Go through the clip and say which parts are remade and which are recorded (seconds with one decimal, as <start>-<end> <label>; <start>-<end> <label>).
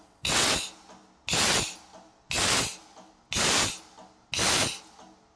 0.0-0.5 remade; 0.5-5.4 recorded